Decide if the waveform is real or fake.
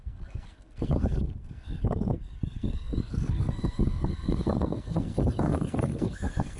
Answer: fake